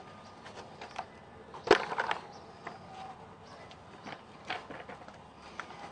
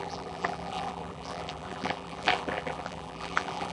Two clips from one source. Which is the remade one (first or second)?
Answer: second